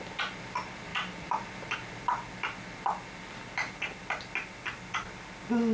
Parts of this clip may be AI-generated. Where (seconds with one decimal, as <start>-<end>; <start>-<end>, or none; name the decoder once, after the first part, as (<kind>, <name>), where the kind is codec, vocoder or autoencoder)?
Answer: none